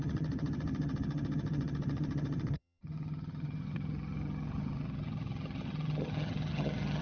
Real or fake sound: fake